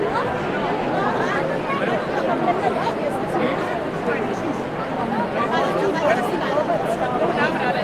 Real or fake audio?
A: real